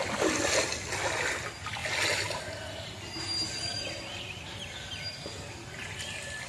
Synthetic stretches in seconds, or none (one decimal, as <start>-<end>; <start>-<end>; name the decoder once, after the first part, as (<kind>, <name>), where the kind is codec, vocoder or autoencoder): none